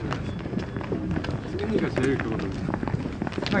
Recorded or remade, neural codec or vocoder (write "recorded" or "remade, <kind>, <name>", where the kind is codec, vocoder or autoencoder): recorded